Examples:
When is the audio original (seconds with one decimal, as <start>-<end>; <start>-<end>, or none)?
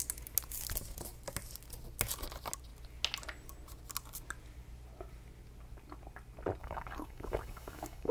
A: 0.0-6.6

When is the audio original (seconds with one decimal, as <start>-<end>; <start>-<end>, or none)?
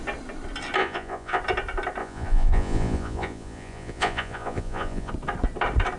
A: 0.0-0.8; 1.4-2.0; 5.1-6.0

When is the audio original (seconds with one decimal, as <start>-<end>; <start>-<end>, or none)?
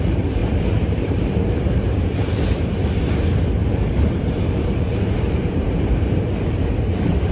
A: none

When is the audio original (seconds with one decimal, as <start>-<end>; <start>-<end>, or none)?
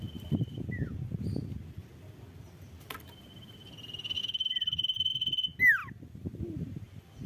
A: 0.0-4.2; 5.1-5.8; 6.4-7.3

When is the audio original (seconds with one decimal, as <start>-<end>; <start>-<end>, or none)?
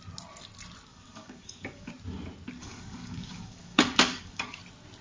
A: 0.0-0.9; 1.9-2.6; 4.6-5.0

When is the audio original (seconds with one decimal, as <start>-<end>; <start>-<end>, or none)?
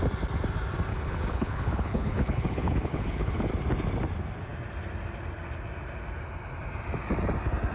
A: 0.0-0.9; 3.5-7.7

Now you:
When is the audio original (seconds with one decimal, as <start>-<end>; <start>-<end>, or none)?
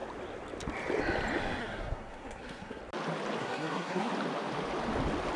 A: 0.0-1.6; 2.8-3.4; 4.1-5.4